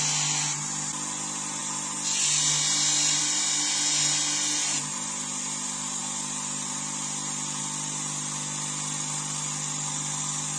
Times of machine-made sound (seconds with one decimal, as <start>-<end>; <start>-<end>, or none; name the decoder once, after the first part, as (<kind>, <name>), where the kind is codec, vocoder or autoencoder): none